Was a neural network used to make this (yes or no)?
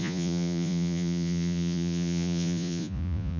yes